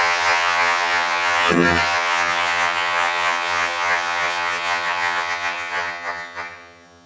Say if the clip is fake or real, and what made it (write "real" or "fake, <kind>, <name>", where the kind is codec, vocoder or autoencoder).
fake, vocoder, HiFi-GAN